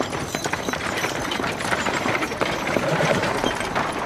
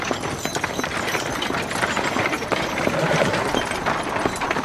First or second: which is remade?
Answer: first